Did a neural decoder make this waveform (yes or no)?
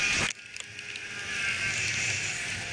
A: no